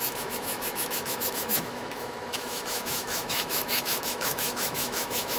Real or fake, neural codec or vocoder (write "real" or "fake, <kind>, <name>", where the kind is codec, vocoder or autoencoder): fake, autoencoder, DAC-VAE